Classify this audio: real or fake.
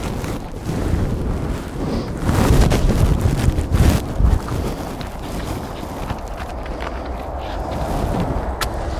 real